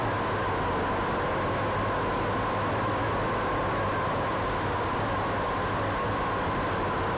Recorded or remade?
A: recorded